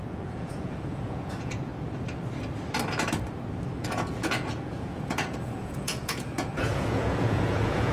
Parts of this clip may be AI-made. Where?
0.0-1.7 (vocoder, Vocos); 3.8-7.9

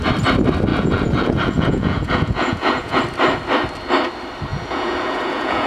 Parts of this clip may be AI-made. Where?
0.7-3.0 (vocoder, Vocos); 4.5-5.7

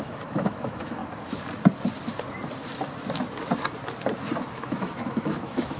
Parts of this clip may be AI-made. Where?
0.0-1.0 (autoencoder, DAC-VAE); 4.5-5.8

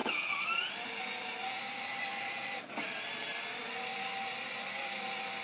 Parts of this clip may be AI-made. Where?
0.0-3.9 (vocoder, BigVGAN v2)

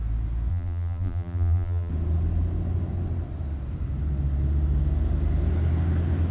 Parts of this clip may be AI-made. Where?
0.5-1.9 (vocoder, BigVGAN v2)

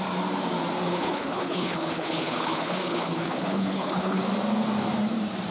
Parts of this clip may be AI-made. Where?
0.9-4.2 (codec, HILCodec)